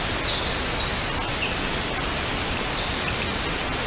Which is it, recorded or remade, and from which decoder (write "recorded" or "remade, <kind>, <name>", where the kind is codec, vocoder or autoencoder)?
recorded